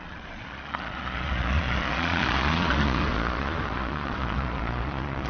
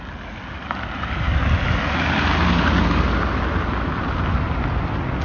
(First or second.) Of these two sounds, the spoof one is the first